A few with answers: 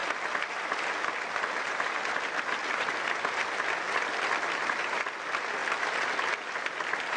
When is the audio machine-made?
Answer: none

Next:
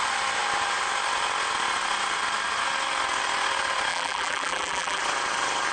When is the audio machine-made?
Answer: 3.9-5.0 (vocoder, BigVGAN v2)